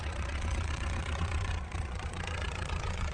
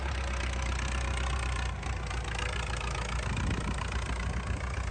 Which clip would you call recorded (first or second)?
second